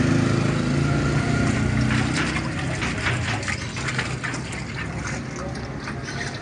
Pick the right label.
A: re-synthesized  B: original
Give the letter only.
B